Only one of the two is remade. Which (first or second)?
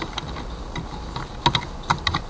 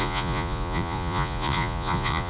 second